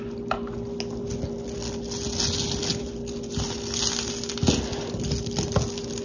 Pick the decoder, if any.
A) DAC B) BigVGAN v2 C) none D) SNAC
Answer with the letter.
C